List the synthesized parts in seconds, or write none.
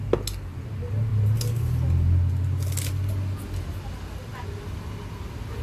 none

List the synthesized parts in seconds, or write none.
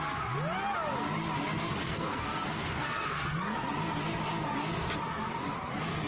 1.8-3.2 (codec, SNAC)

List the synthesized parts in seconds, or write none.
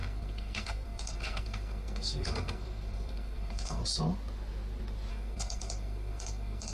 0.0-3.8 (codec, SNAC); 5.1-6.7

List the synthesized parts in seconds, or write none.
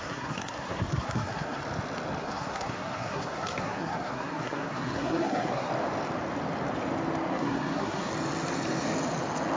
0.0-1.6 (codec, SNAC); 2.2-5.7; 7.3-8.1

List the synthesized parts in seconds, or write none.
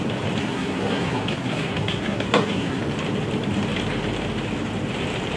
0.4-2.8 (codec, SNAC)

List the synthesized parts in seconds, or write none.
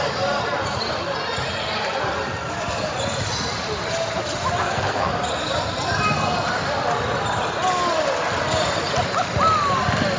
4.6-5.1 (codec, SNAC)